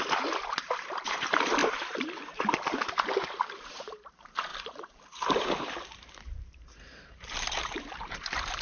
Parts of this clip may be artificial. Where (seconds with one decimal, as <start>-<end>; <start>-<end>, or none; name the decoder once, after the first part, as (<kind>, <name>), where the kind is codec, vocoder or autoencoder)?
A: 0.0-8.6 (vocoder, BigVGAN v2)